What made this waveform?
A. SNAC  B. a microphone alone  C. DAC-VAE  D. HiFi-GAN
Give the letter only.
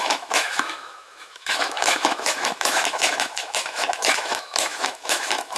C